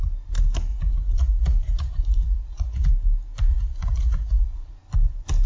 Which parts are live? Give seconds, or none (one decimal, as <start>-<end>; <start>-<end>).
0.0-0.7; 2.9-3.5; 4.7-5.5